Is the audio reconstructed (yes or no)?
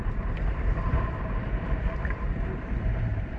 yes